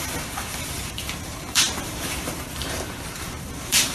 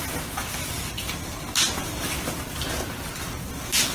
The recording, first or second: second